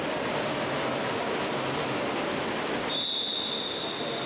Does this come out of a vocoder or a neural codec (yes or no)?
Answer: no